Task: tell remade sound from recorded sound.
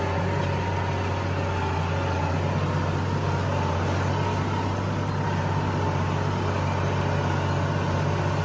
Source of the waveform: recorded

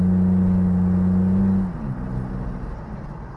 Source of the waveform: recorded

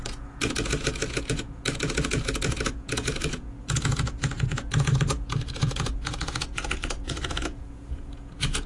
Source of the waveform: remade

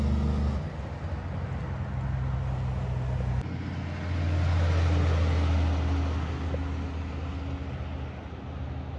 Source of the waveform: recorded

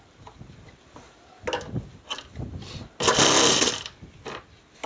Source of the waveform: recorded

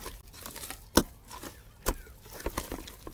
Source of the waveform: recorded